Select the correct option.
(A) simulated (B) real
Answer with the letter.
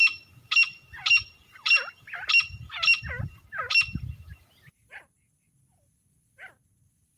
A